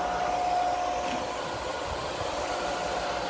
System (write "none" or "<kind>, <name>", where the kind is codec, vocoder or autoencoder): none